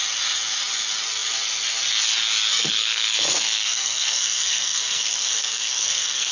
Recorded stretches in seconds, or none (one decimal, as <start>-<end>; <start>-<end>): 0.0-2.5